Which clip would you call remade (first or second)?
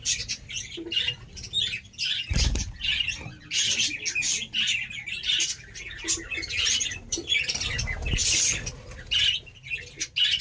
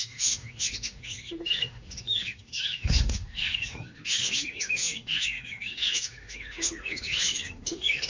second